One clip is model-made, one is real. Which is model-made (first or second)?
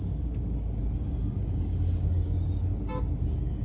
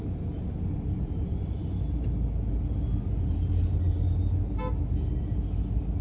first